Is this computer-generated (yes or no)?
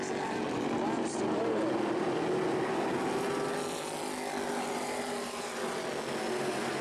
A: no